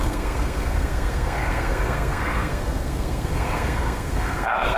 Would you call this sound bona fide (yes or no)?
no